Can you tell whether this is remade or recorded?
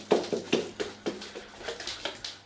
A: recorded